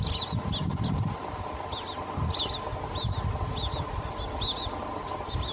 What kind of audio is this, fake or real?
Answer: real